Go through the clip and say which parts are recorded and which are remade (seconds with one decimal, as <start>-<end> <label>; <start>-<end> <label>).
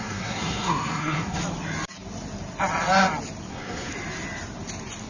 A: 0.0-1.4 remade; 1.4-3.5 recorded; 3.5-3.9 remade; 3.9-5.1 recorded